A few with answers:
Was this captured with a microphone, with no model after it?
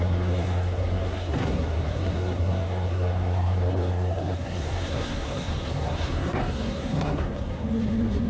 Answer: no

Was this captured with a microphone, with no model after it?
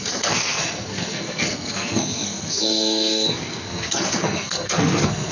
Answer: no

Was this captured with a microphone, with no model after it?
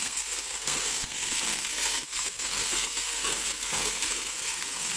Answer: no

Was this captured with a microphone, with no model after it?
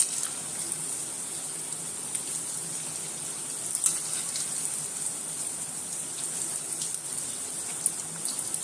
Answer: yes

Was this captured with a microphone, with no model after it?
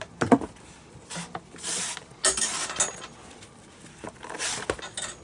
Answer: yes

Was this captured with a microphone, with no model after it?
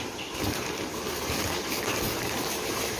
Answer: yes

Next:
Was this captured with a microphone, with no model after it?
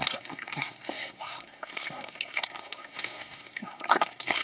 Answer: no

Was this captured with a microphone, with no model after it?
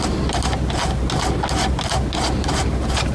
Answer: yes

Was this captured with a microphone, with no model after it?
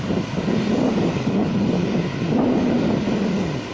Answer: yes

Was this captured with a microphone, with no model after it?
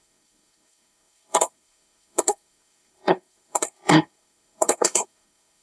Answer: no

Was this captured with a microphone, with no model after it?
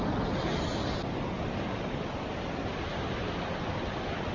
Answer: yes